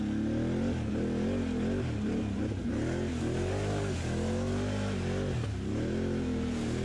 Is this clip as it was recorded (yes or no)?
yes